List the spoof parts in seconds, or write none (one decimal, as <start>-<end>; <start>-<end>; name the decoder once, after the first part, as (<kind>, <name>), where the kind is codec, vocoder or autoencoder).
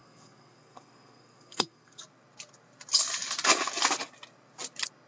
0.0-2.0 (codec, SNAC)